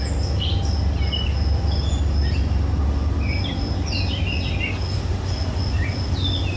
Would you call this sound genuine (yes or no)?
yes